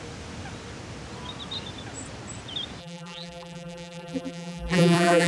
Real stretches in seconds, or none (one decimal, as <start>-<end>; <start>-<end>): 0.0-2.8